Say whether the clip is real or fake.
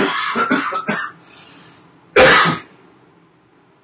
real